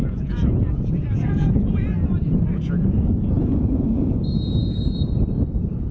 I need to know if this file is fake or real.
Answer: fake